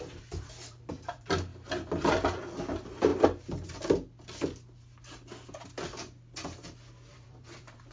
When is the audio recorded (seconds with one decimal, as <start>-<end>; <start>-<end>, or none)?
3.1-7.1